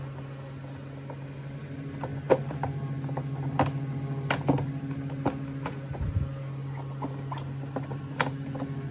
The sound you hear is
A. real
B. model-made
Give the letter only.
A